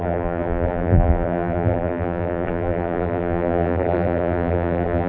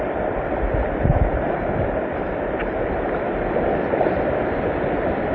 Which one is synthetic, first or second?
first